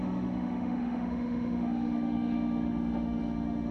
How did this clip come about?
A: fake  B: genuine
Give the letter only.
A